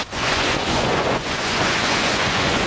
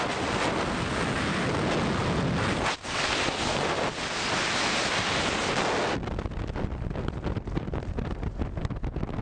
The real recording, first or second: second